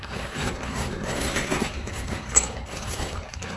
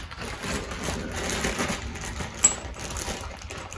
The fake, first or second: first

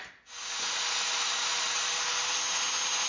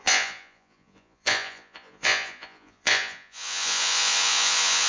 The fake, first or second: second